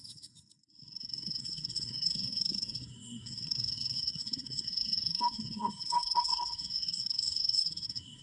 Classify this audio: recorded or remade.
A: remade